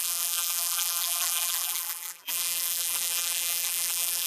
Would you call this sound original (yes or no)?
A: no